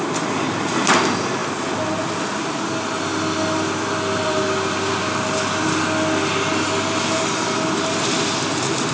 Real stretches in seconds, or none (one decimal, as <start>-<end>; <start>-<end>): 0.0-8.9